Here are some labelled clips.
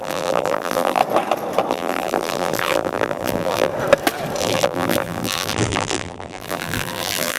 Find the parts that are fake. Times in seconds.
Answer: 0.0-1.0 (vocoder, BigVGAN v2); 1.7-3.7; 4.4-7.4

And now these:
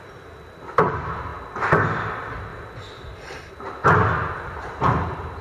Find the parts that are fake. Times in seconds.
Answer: 0.0-1.3 (vocoder, BigVGAN v2); 2.0-2.5; 3.1-3.8; 4.3-5.4